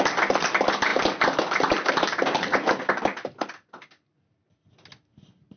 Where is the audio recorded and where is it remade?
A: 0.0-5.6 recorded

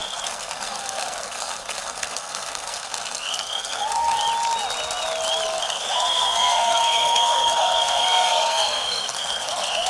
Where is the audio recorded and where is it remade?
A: 0.0-4.2 remade; 4.2-5.6 recorded; 5.6-9.9 remade

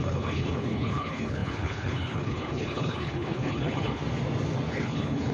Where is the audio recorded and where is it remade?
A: 0.0-4.0 remade; 4.0-4.7 recorded; 4.7-5.3 remade